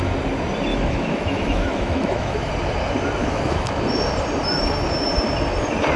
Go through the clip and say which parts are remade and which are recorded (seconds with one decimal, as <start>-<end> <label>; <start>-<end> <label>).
0.0-0.7 recorded; 0.7-2.5 remade; 2.5-3.2 recorded; 3.2-3.8 remade; 3.8-6.0 recorded